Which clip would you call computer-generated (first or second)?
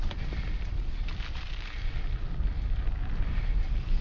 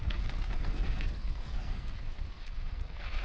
second